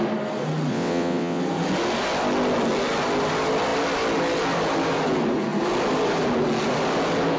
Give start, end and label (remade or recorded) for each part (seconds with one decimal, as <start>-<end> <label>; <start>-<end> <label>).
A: 0.0-0.7 recorded; 0.7-1.4 remade; 1.4-7.4 recorded